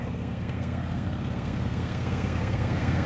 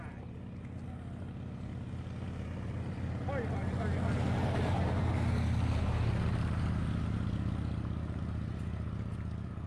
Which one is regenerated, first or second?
first